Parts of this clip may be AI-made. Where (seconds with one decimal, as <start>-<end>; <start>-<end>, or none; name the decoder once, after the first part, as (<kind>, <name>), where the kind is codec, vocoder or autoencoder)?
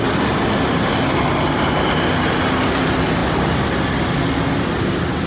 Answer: none